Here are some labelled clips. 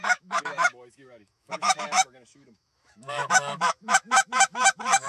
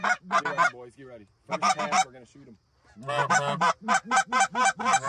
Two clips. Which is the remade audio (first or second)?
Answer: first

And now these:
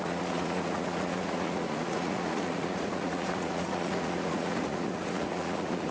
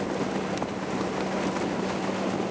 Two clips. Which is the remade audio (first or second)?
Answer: first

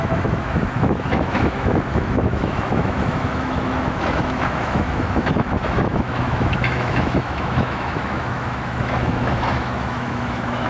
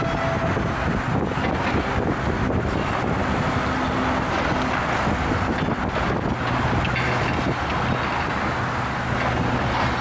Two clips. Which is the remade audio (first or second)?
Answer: first